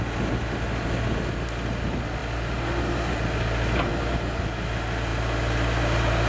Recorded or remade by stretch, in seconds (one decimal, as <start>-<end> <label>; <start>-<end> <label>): 0.0-6.3 recorded